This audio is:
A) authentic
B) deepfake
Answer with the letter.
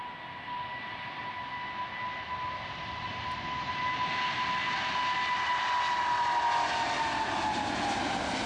A